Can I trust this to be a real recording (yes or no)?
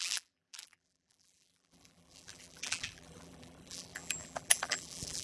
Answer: no